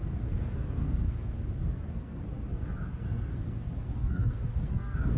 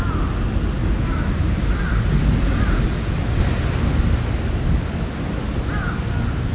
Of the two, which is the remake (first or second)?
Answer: first